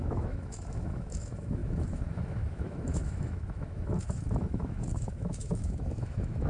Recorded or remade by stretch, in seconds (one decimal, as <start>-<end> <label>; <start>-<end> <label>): 0.0-6.5 remade